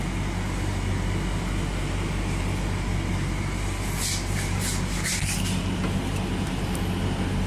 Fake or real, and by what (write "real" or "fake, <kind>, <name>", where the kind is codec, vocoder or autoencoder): real